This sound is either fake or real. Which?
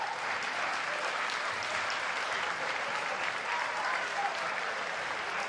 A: fake